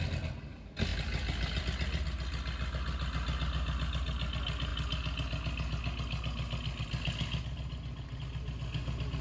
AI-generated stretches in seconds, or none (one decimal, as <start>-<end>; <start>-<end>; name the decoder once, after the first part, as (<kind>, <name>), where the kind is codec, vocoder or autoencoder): none